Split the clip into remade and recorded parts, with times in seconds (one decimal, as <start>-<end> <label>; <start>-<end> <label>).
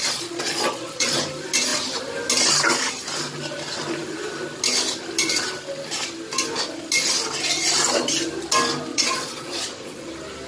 0.0-1.2 remade; 1.2-8.9 recorded; 8.9-10.1 remade; 10.1-10.5 recorded